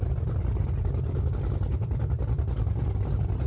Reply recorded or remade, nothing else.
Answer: recorded